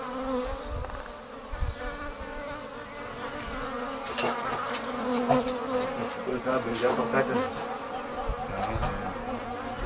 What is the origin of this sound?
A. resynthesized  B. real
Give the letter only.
B